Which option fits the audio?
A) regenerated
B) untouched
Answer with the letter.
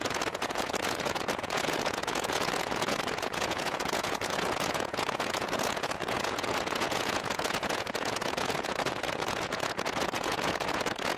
A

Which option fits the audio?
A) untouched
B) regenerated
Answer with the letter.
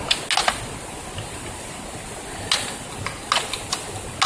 A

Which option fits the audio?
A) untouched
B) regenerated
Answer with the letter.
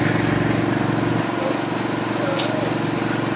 A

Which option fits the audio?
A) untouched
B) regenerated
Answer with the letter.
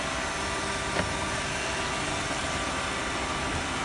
A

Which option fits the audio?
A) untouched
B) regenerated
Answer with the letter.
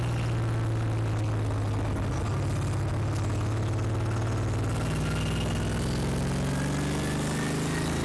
A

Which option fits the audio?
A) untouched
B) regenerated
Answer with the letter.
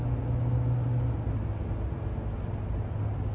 A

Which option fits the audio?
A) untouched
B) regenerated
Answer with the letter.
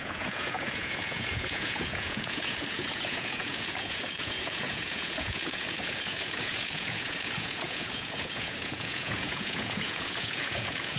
B